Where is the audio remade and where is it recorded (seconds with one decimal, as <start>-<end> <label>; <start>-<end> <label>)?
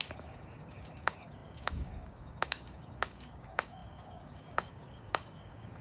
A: 0.0-5.8 remade